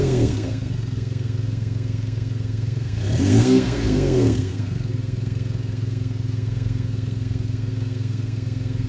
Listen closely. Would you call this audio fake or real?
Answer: fake